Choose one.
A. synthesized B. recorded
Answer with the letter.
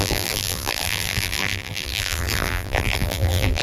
A